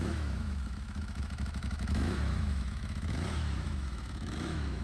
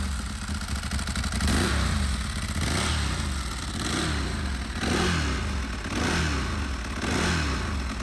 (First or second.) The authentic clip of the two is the second